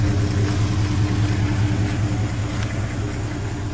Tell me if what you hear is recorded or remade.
recorded